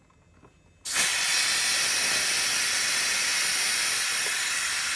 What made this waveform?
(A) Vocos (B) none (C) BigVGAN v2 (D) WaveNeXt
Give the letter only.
B